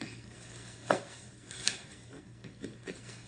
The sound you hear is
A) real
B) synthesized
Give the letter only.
B